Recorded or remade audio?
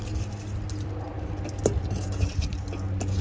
recorded